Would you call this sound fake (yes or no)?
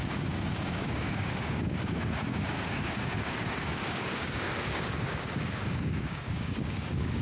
yes